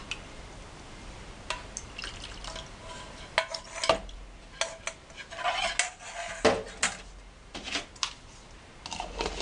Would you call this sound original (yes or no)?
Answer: yes